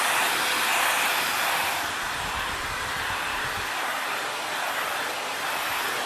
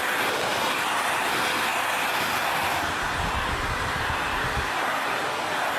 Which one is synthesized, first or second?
first